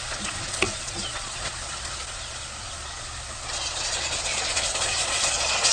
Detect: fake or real fake